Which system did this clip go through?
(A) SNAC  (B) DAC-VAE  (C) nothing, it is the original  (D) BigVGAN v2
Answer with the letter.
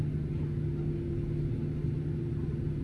C